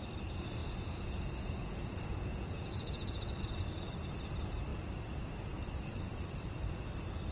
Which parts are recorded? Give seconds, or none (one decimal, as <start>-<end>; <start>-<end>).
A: 0.0-0.6; 3.6-7.3